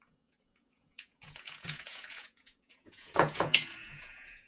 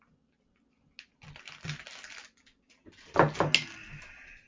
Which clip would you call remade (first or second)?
first